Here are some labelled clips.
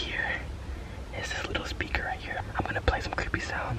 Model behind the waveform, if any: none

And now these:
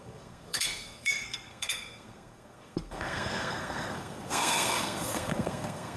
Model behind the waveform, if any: codec, SNAC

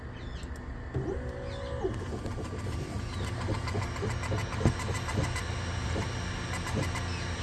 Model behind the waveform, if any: none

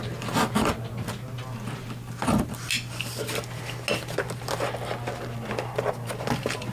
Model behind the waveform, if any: none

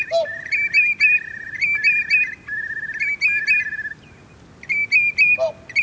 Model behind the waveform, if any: none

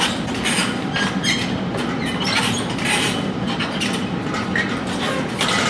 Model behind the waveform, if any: none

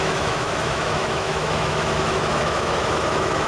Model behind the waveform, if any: autoencoder, DAC-VAE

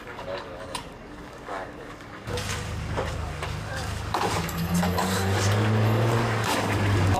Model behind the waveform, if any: codec, DAC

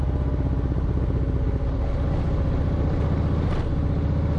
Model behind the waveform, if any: none